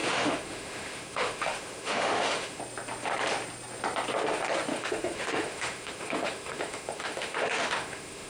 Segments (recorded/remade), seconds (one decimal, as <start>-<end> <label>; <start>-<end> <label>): 0.0-2.6 remade; 2.6-4.7 recorded; 4.7-8.3 remade